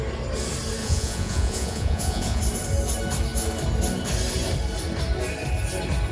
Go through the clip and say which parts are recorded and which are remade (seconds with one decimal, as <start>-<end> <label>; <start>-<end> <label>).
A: 0.0-0.8 recorded; 0.8-2.4 remade; 2.4-6.1 recorded